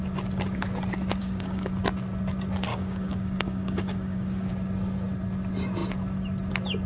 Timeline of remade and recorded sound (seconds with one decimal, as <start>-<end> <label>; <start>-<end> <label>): 0.0-1.2 recorded; 1.2-1.7 remade; 1.7-2.7 recorded; 2.7-4.5 remade; 4.5-6.9 recorded

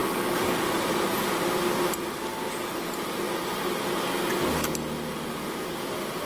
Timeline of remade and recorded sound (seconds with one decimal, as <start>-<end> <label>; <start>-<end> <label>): 0.0-6.3 recorded

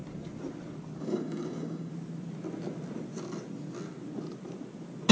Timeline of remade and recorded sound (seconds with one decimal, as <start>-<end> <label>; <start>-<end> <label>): 0.0-1.0 recorded; 1.0-1.9 remade; 1.9-5.1 recorded